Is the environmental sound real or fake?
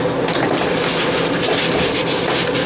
real